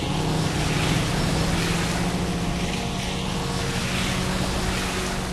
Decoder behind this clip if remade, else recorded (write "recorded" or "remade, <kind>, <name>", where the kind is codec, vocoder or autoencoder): recorded